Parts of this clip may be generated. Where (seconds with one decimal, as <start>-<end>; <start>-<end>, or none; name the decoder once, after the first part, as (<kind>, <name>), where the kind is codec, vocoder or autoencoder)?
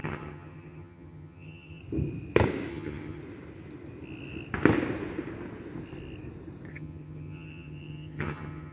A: 0.0-1.8 (vocoder, HiFi-GAN); 2.7-3.2; 6.7-8.7